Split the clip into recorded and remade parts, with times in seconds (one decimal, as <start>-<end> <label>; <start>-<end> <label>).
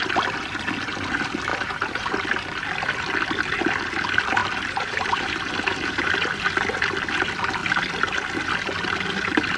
0.0-1.5 recorded; 1.5-2.1 remade; 2.1-4.4 recorded; 4.4-6.1 remade; 6.1-9.6 recorded